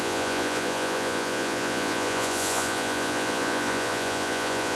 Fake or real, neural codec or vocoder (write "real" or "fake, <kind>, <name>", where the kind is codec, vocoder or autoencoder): fake, vocoder, Vocos